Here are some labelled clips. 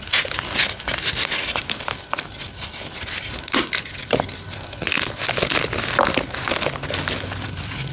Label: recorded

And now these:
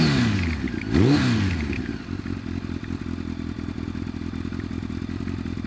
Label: recorded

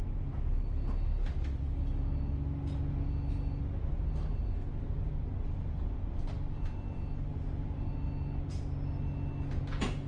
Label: recorded